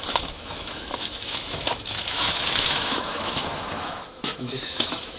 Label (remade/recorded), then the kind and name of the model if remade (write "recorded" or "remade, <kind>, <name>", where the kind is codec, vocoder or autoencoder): remade, autoencoder, DAC-VAE